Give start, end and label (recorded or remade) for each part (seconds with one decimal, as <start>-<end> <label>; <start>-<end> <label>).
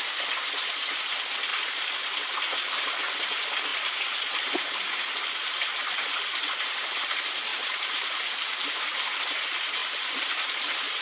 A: 0.0-7.5 recorded; 7.5-9.1 remade; 9.1-9.8 recorded; 9.8-11.0 remade